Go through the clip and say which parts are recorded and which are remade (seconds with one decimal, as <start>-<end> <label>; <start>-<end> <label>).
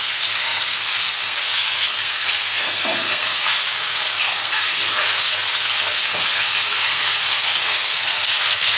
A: 0.0-8.8 remade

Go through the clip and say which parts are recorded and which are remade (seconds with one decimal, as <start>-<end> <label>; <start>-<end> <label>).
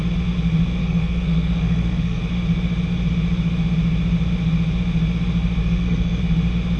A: 0.0-0.8 recorded; 0.8-2.2 remade; 2.2-5.6 recorded; 5.6-6.2 remade; 6.2-6.8 recorded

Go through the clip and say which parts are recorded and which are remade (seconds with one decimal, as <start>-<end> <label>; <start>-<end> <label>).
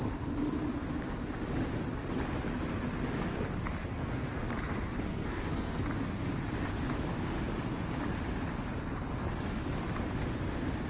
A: 0.0-3.8 recorded; 3.8-4.4 remade; 4.4-5.1 recorded; 5.1-5.8 remade; 5.8-10.9 recorded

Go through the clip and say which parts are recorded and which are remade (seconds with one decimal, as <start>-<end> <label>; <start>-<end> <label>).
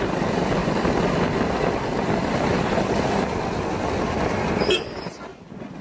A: 0.0-5.8 recorded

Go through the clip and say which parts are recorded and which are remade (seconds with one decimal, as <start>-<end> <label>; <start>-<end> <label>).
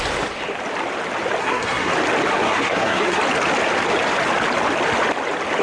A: 0.0-1.4 recorded; 1.4-1.9 remade; 1.9-2.3 recorded; 2.3-3.2 remade; 3.2-5.6 recorded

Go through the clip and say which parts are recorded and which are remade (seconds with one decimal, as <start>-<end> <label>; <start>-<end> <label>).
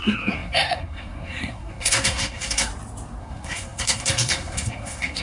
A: 0.0-2.7 remade; 2.7-3.2 recorded; 3.2-5.2 remade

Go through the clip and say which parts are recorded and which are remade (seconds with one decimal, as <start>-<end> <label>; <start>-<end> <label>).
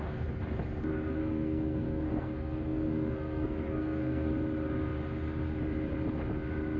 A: 0.0-0.9 recorded; 0.9-4.3 remade; 4.3-6.8 recorded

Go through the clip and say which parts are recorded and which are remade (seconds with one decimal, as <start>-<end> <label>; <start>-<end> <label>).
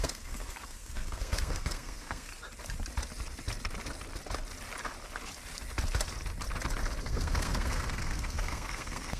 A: 0.0-2.3 remade; 2.3-7.0 recorded; 7.0-9.2 remade